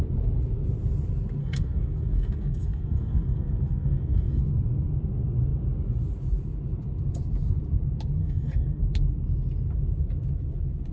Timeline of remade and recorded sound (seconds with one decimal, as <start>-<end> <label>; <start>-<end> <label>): 0.0-1.4 recorded; 1.4-4.4 remade; 4.4-8.2 recorded; 8.2-8.8 remade; 8.8-10.9 recorded